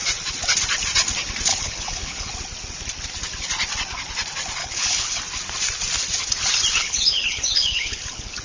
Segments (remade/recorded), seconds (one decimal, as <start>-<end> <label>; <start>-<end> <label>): 0.0-1.5 recorded; 1.5-2.3 remade; 2.3-4.6 recorded; 4.6-5.2 remade; 5.2-6.8 recorded; 6.8-8.4 remade

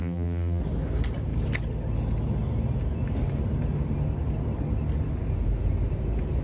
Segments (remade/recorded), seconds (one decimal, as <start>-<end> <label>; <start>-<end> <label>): 0.0-0.6 remade; 0.6-6.4 recorded

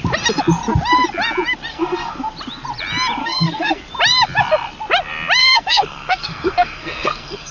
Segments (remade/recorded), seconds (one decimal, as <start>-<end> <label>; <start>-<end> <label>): 0.0-1.7 recorded; 1.7-2.3 remade; 2.3-3.2 recorded; 3.2-3.8 remade; 3.8-5.4 recorded; 5.4-7.5 remade

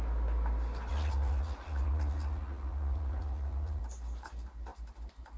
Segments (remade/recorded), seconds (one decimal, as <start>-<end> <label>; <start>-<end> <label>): 0.0-0.9 recorded; 0.9-3.8 remade; 3.8-5.4 recorded

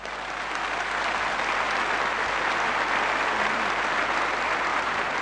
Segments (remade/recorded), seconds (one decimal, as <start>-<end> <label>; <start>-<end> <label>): 0.0-4.7 recorded; 4.7-5.2 remade

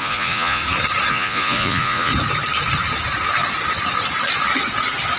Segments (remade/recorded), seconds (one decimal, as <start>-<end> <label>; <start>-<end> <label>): 0.0-0.6 remade; 0.6-1.1 recorded; 1.1-2.1 remade; 2.1-5.2 recorded